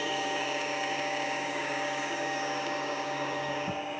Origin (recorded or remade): remade